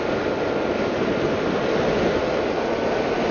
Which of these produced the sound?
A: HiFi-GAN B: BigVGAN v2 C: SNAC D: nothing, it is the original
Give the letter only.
D